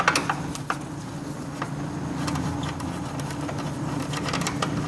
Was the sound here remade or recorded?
recorded